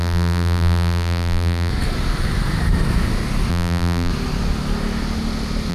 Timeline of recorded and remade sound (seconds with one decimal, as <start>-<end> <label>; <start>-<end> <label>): 0.0-1.7 remade; 1.7-3.5 recorded; 3.5-4.1 remade; 4.1-5.7 recorded